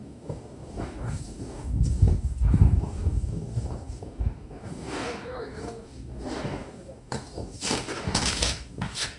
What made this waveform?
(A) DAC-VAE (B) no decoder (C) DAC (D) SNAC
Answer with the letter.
C